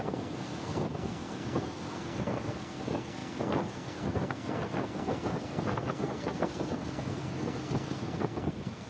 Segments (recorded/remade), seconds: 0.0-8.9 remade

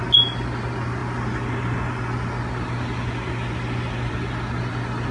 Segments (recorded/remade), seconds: 0.0-5.1 recorded

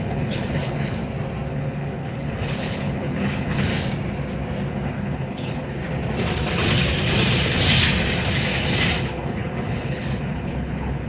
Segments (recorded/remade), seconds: 0.0-1.0 remade; 1.0-1.5 recorded; 1.5-3.7 remade; 3.7-4.7 recorded; 4.7-5.8 remade; 5.8-9.0 recorded; 9.0-11.1 remade

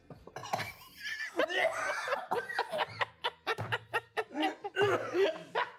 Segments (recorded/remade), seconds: 0.0-2.1 recorded; 2.1-2.9 remade; 2.9-3.5 recorded; 3.5-5.3 remade; 5.3-5.8 recorded

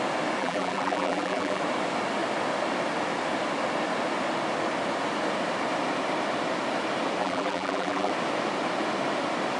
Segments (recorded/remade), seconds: 0.0-0.4 recorded; 0.4-1.6 remade; 1.6-7.2 recorded; 7.2-8.1 remade; 8.1-9.6 recorded